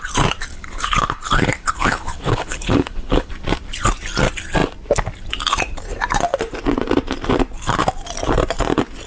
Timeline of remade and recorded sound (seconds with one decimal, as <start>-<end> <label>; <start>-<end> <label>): 0.0-0.5 recorded; 0.5-3.3 remade; 3.3-9.1 recorded